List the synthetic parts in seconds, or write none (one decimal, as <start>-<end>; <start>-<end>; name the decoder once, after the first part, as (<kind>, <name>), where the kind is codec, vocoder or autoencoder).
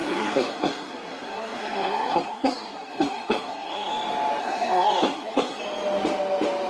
0.0-3.9 (codec, SNAC); 4.4-5.6